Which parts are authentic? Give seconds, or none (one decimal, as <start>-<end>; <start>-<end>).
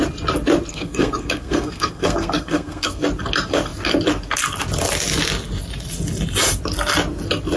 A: 0.0-0.7; 3.0-7.6